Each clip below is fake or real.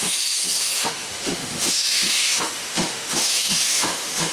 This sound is fake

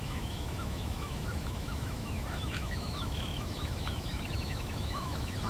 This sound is fake